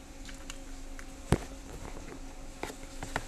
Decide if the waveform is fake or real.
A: real